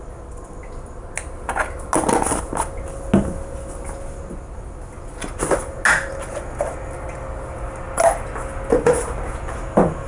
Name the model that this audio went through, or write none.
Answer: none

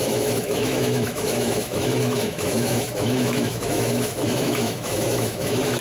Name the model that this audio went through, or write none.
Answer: autoencoder, DAC-VAE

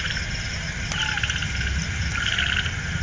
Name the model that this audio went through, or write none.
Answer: none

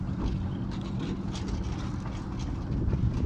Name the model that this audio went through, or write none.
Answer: none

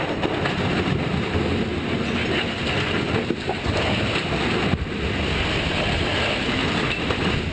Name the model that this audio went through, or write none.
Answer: none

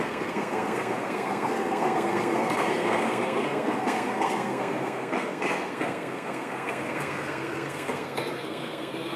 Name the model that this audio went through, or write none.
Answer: codec, SNAC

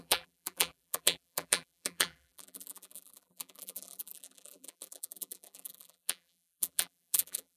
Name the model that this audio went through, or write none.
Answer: vocoder, BigVGAN v2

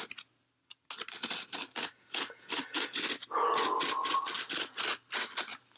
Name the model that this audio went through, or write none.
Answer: none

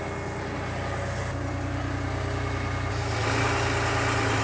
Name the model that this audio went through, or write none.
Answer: none